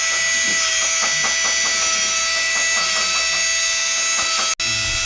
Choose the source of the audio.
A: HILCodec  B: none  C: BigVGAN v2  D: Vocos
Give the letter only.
B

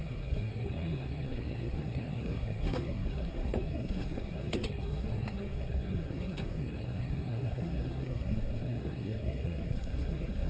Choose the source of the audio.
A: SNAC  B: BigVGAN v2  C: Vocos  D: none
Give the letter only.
A